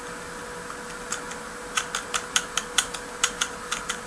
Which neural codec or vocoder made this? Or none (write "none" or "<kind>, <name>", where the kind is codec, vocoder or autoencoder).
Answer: none